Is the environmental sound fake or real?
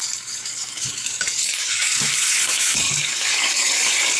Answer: fake